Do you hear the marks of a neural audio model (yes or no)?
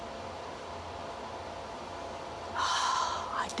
no